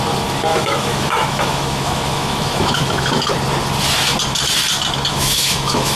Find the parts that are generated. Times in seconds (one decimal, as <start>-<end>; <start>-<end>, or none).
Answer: 0.5-3.3; 5.1-6.0